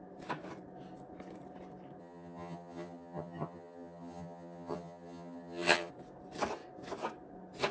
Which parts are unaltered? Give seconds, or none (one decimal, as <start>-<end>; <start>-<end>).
0.0-2.0; 5.9-7.7

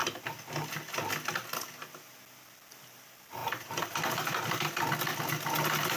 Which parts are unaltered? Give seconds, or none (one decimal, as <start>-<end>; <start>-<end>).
0.0-3.4; 4.8-6.0